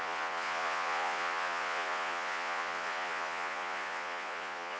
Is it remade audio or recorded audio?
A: remade